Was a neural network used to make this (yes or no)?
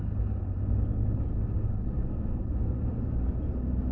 no